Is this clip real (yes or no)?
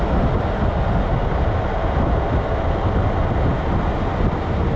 yes